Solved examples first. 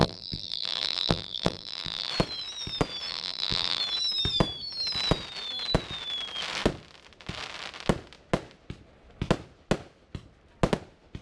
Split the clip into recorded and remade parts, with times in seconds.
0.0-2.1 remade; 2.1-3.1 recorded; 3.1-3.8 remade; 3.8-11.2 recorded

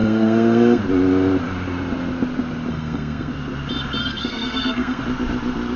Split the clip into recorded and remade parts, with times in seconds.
0.0-0.8 remade; 0.8-2.7 recorded; 2.7-3.3 remade; 3.3-4.0 recorded; 4.0-5.0 remade; 5.0-5.8 recorded

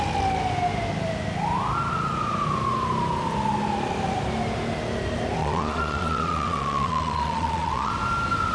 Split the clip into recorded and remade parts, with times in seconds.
0.0-5.4 recorded; 5.4-7.9 remade; 7.9-8.5 recorded

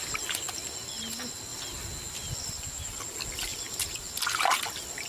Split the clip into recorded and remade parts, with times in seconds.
0.0-5.1 recorded